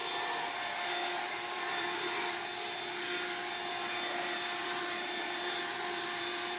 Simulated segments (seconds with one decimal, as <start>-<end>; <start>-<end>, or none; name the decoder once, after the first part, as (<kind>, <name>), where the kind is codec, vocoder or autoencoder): 1.0-2.5 (vocoder, BigVGAN v2); 4.6-6.6